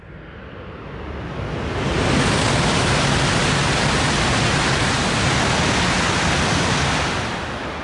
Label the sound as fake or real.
real